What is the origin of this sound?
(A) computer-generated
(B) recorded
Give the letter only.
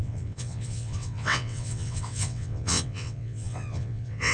A